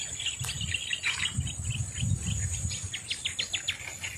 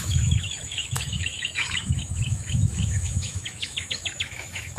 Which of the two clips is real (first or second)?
first